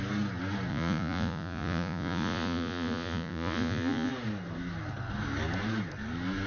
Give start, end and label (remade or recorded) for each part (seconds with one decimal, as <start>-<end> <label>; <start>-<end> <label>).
0.0-0.7 recorded; 0.7-4.1 remade; 4.1-6.5 recorded